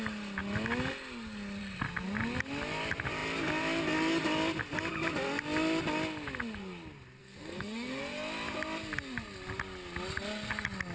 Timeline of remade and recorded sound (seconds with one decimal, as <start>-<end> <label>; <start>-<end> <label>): 0.0-7.2 recorded; 7.2-8.0 remade; 8.0-10.9 recorded